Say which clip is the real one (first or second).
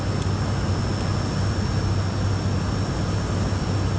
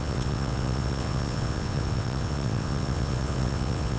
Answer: first